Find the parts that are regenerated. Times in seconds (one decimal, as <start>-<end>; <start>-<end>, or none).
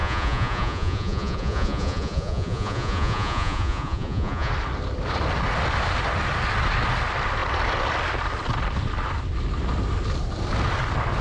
0.0-4.5